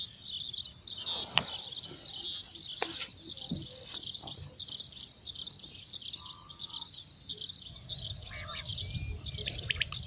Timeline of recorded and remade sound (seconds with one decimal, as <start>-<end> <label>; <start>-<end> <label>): 0.0-10.1 recorded